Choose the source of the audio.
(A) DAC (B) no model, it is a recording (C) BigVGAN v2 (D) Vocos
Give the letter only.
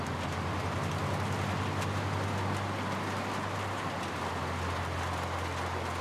B